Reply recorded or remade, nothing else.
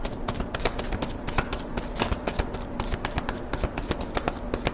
recorded